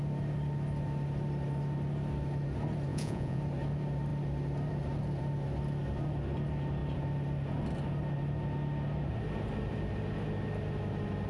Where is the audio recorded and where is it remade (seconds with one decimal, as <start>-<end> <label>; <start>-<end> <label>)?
0.0-2.9 recorded; 2.9-3.4 remade; 3.4-11.3 recorded